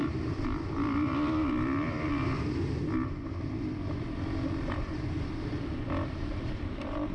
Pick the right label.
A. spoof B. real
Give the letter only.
A